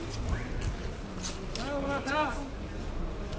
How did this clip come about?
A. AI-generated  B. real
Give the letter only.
B